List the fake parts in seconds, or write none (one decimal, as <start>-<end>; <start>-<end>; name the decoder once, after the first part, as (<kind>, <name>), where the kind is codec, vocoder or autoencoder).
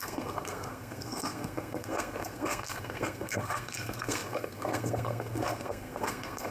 0.0-6.5 (codec, SNAC)